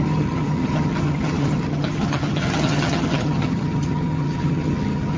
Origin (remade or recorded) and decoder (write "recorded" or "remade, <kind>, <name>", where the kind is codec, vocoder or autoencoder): remade, vocoder, HiFi-GAN